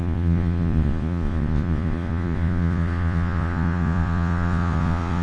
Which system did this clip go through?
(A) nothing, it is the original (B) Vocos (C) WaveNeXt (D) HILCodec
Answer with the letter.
B